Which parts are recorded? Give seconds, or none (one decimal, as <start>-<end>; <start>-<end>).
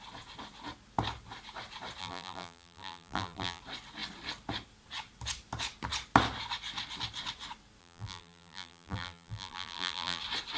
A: 0.0-2.0; 3.6-7.8; 10.2-10.6